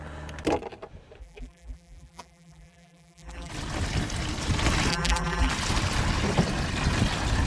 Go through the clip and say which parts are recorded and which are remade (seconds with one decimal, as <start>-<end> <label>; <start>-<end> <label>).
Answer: 0.0-1.2 recorded; 1.2-3.5 remade; 3.5-4.9 recorded; 4.9-5.5 remade; 5.5-7.5 recorded